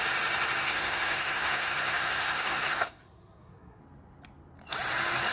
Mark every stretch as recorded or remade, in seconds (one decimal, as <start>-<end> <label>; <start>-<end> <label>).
0.0-0.6 recorded; 0.6-3.8 remade; 3.8-5.3 recorded